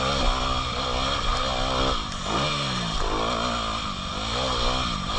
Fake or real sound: real